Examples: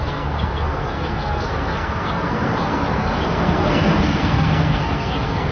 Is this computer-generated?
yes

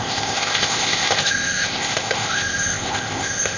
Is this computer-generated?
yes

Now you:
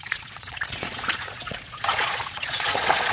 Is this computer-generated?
yes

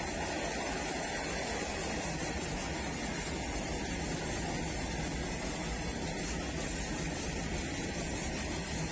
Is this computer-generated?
no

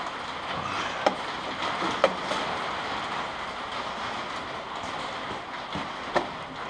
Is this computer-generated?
no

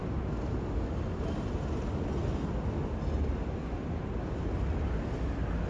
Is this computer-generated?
no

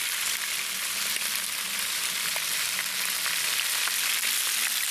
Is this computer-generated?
no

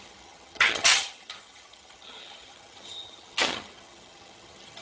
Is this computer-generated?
yes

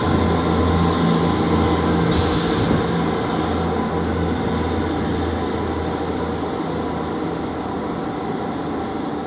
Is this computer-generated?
no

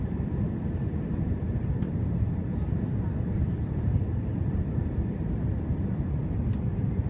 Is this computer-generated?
yes